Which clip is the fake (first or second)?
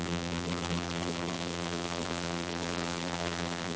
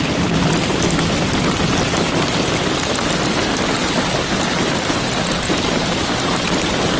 first